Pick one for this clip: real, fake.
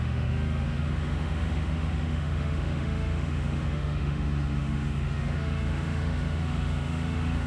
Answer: fake